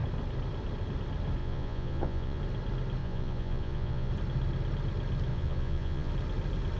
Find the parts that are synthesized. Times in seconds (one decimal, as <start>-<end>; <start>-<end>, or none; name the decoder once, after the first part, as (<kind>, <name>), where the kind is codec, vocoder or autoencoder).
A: 1.4-2.4 (vocoder, Vocos); 3.0-4.1; 5.3-6.1